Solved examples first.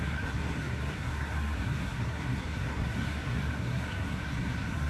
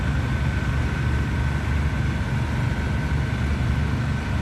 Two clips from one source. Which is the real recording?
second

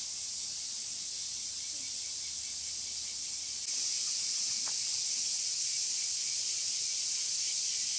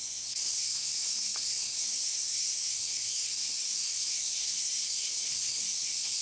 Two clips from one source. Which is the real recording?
first